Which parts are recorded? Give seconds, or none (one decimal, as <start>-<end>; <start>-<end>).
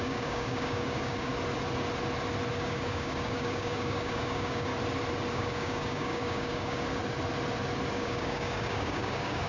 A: 1.3-2.5; 4.7-5.3; 7.0-7.9